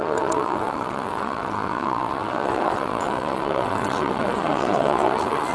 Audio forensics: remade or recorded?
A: remade